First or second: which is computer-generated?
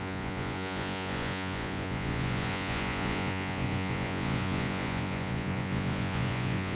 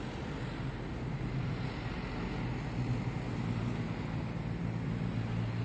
first